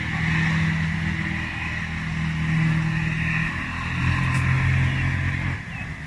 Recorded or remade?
recorded